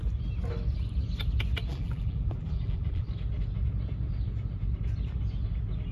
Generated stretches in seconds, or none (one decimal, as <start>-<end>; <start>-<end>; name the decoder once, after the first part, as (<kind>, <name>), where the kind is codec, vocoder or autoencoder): 1.7-3.1 (vocoder, BigVGAN v2)